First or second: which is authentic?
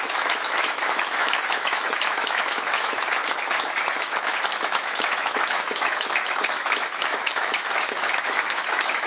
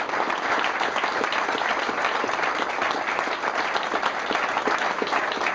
second